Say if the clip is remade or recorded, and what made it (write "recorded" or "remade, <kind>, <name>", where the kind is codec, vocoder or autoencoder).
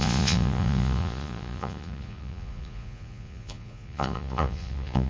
remade, vocoder, Vocos